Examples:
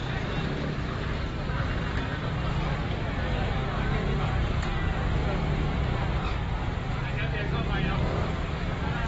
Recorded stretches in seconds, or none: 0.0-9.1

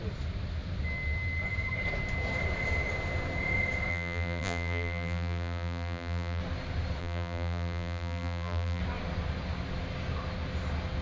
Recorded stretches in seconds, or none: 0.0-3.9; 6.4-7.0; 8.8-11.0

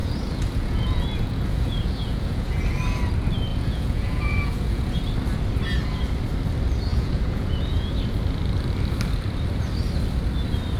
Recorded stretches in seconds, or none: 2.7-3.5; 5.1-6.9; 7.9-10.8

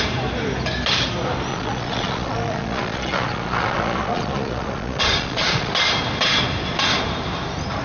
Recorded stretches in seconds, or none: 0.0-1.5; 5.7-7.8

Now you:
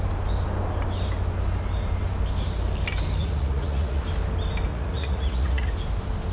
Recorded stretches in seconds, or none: 0.0-3.2; 4.0-4.7; 5.7-6.3